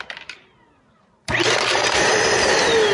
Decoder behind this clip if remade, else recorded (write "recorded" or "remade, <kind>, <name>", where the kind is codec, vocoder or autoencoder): remade, vocoder, BigVGAN v2